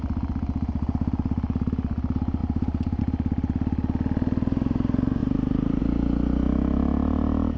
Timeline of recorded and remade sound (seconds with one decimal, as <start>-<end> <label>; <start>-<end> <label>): 0.0-2.4 recorded; 2.4-3.0 remade; 3.0-5.2 recorded; 5.2-5.8 remade; 5.8-7.6 recorded